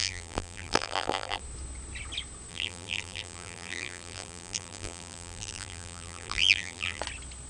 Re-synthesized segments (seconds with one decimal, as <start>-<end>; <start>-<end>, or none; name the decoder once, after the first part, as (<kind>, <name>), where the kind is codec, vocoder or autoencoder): 0.0-1.4 (vocoder, BigVGAN v2); 2.5-7.0